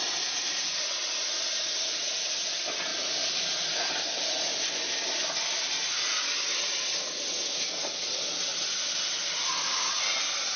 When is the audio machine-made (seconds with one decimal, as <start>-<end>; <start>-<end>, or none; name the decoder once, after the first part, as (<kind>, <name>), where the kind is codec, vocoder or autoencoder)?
none

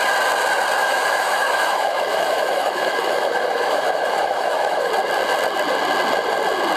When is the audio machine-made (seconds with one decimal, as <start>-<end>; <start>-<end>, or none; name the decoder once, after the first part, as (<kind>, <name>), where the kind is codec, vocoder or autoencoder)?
0.8-4.9 (autoencoder, DAC-VAE)

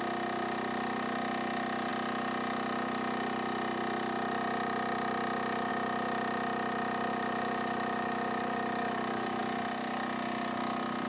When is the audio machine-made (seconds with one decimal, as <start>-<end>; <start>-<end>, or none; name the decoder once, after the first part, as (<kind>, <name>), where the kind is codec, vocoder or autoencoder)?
7.1-9.4 (autoencoder, DAC-VAE)

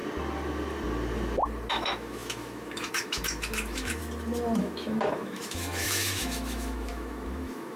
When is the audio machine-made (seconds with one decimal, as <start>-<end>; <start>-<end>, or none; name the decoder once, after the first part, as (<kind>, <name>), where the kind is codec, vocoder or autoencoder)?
1.7-4.0 (autoencoder, DAC-VAE); 4.6-7.8